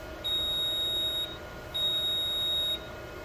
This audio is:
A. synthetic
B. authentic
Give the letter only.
B